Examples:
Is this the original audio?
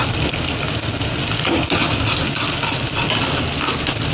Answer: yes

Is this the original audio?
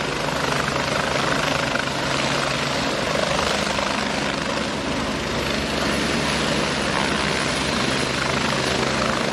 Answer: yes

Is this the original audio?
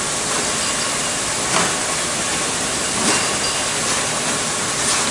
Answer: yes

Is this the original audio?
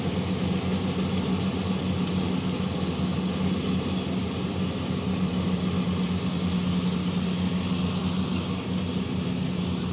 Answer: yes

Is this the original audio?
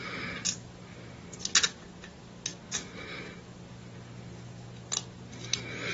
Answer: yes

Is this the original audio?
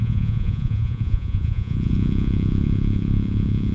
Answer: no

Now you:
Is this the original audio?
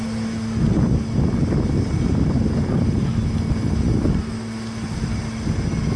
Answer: yes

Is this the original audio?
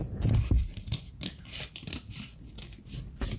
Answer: yes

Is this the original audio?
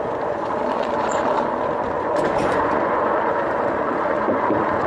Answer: no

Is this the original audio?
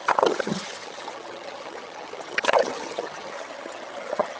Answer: no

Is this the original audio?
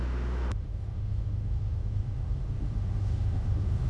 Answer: no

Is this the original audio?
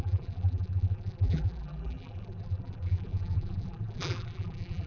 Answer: no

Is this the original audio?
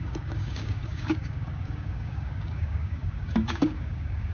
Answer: no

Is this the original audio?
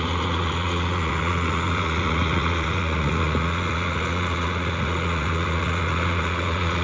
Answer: no